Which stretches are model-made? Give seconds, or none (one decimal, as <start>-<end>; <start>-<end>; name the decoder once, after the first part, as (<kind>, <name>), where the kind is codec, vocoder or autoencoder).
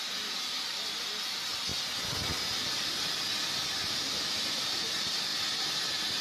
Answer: 0.0-1.7 (vocoder, BigVGAN v2); 4.0-5.3